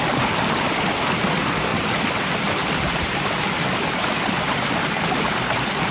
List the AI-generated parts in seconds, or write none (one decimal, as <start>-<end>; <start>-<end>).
1.7-5.2

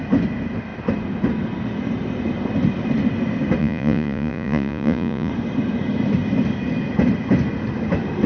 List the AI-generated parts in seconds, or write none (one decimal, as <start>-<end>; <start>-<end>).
3.6-5.3

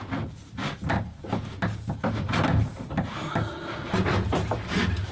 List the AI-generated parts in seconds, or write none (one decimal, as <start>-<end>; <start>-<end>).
none

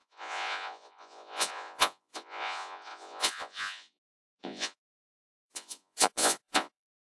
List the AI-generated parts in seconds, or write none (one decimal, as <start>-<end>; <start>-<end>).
0.0-7.1

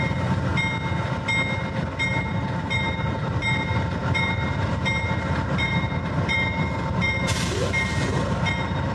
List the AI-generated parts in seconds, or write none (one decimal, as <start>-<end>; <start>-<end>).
0.0-0.5; 2.1-8.9

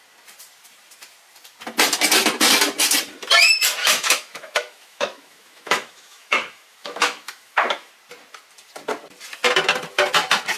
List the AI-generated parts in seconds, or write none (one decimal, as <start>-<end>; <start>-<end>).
3.8-7.9

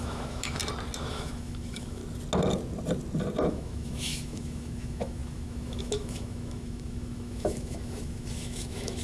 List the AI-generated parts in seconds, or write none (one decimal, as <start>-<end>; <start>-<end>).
0.0-0.6; 1.1-2.0; 3.5-9.0